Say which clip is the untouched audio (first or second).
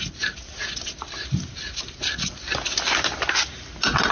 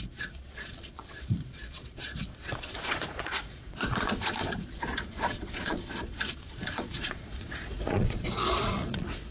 first